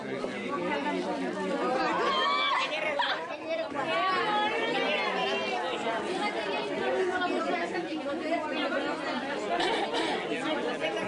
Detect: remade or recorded recorded